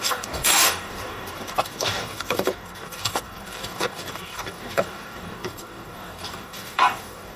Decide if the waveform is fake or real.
fake